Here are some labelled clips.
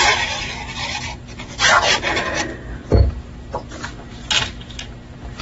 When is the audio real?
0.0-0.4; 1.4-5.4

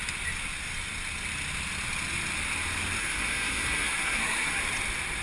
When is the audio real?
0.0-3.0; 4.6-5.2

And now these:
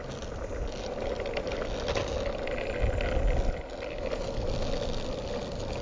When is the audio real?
0.0-5.8

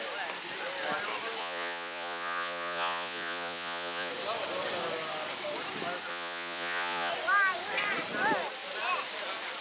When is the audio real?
0.0-1.4; 4.1-6.1; 7.1-9.6

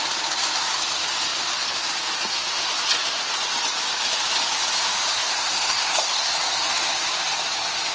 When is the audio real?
0.0-5.1; 6.3-7.9